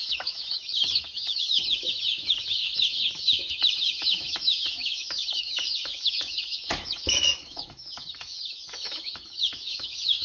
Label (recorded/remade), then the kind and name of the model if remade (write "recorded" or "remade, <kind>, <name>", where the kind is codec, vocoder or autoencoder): remade, autoencoder, DAC-VAE